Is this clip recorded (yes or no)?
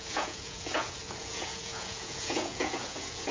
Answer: no